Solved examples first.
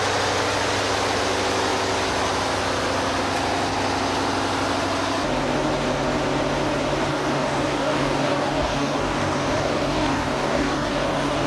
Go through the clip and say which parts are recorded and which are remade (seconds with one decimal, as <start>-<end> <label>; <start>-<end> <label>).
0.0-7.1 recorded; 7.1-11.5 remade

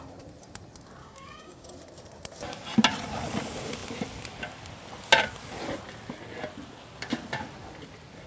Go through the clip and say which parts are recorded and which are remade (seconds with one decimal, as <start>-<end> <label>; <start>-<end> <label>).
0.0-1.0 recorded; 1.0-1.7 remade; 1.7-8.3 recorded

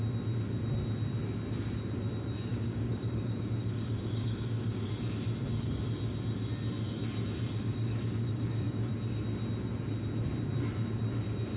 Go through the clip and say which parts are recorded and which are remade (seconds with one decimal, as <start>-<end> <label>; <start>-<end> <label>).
0.0-2.5 recorded; 2.5-4.9 remade; 4.9-7.6 recorded; 7.6-8.9 remade; 8.9-11.6 recorded

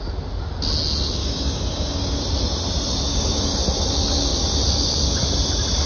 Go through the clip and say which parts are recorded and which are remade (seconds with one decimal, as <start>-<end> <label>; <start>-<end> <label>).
0.0-1.2 recorded; 1.2-2.2 remade; 2.2-3.1 recorded; 3.1-3.6 remade; 3.6-5.9 recorded